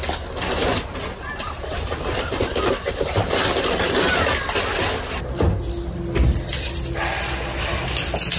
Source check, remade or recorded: recorded